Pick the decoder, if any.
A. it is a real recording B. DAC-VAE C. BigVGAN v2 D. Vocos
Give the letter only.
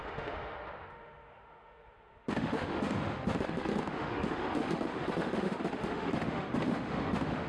B